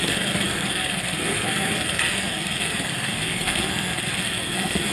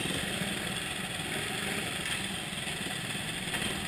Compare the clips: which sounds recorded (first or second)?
second